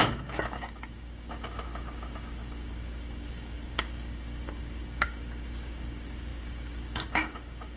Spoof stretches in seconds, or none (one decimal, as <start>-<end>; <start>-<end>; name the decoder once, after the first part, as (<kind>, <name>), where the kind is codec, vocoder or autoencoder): 0.0-7.8 (codec, DAC)